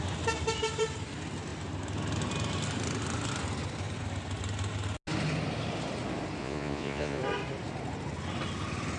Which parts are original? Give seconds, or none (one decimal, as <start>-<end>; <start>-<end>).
0.0-6.4; 7.2-9.0